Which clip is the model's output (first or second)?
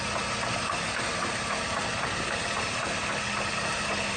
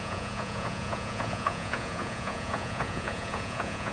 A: second